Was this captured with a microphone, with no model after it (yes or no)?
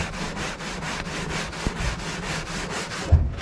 yes